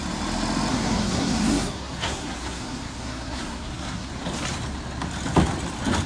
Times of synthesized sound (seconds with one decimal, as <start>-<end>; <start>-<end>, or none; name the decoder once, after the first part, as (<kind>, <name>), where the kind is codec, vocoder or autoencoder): 0.7-4.1 (codec, SNAC)